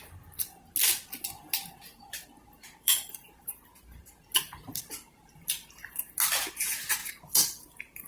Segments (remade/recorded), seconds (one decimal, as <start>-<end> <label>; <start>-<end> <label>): 0.0-1.9 recorded; 1.9-6.0 remade; 6.0-7.0 recorded; 7.0-8.1 remade